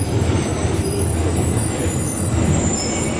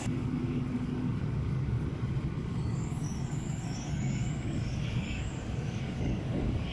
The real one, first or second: first